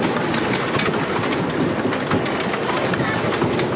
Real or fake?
real